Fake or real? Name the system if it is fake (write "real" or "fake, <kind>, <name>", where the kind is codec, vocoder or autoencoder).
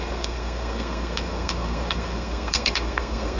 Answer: fake, codec, SNAC